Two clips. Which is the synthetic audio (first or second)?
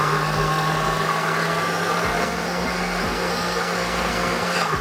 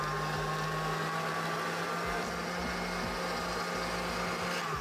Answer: first